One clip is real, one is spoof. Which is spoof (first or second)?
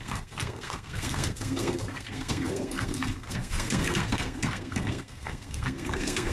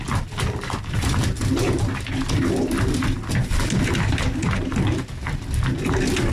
first